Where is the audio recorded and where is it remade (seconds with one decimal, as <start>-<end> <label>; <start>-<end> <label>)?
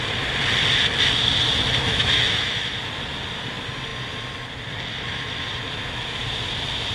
0.0-1.8 recorded; 1.8-2.7 remade; 2.7-6.9 recorded